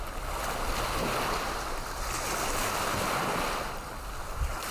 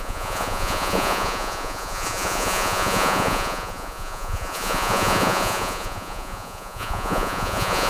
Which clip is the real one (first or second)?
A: first